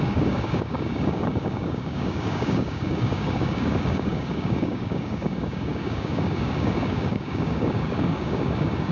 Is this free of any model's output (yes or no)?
no